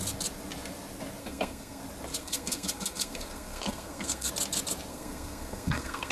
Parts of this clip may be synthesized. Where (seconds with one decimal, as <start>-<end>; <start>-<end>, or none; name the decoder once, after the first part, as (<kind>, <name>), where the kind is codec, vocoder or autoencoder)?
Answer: 1.2-1.8 (codec, SNAC); 2.2-4.3; 4.9-6.1